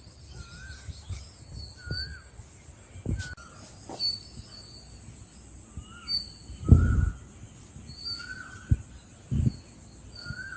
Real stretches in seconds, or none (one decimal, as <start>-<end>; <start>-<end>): 0.0-10.6